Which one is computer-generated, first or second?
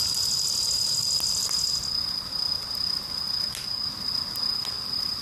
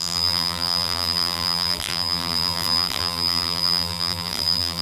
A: second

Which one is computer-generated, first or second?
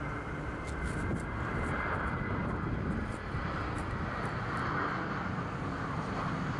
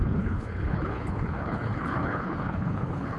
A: second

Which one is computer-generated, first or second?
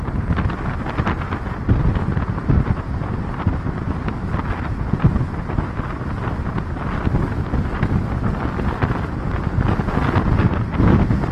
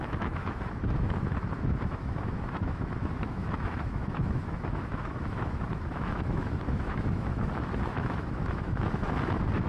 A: second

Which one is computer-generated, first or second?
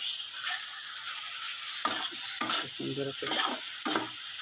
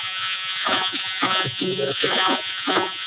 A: second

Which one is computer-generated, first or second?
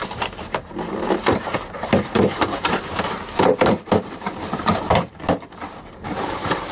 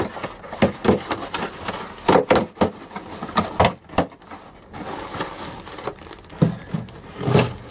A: first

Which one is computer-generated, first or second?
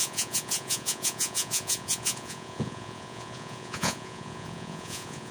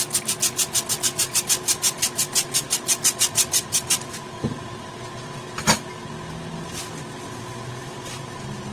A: first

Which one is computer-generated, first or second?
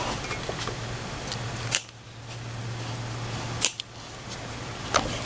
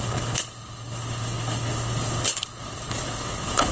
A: second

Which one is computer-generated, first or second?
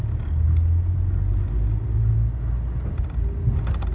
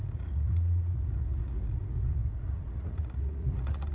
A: second